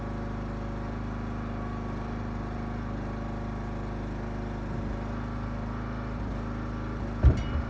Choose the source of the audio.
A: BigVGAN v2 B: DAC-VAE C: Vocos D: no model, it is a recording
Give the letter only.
D